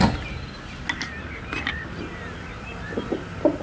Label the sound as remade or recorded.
recorded